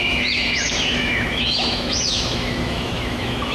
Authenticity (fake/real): fake